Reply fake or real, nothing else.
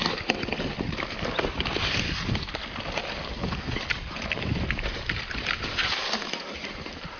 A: real